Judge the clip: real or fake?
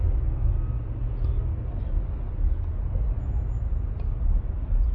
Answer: real